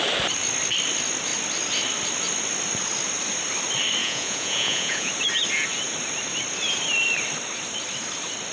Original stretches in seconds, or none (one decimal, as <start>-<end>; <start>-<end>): 0.0-4.0; 5.1-8.5